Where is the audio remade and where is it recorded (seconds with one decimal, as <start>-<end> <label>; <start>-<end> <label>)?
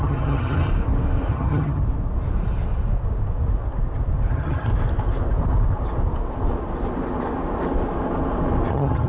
0.0-0.7 remade; 0.7-1.3 recorded; 1.3-1.8 remade; 1.8-4.3 recorded; 4.3-4.7 remade; 4.7-8.7 recorded; 8.7-9.1 remade